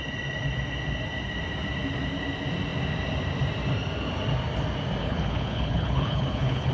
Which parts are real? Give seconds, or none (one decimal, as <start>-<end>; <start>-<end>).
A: 0.0-5.0